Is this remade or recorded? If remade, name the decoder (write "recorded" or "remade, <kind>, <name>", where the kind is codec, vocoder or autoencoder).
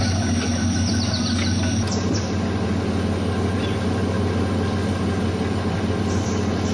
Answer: recorded